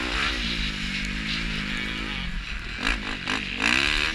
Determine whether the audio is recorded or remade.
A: recorded